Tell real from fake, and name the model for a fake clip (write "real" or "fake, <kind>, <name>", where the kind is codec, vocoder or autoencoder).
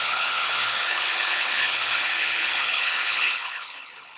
fake, codec, HILCodec